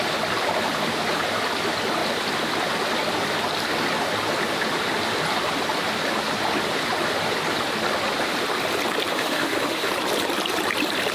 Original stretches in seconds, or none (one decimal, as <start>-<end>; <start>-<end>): 0.0-9.1; 9.9-11.1

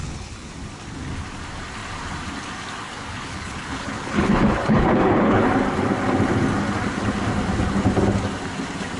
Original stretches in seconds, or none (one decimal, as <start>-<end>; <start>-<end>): 0.5-2.8; 5.4-9.0

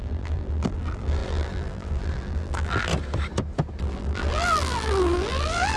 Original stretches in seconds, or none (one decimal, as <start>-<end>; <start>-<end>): 2.9-3.8

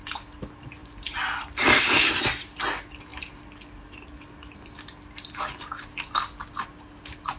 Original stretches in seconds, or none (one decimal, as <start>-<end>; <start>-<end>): 0.0-0.8; 2.3-7.4